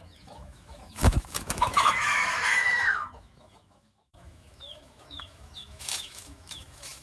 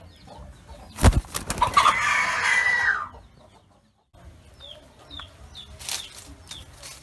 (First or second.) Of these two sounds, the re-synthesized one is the first